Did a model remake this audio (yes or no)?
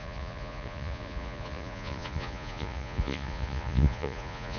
yes